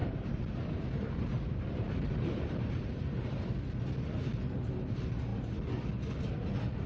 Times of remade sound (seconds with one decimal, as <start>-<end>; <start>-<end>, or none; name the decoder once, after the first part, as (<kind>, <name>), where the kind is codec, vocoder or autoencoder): 0.0-3.5 (vocoder, BigVGAN v2)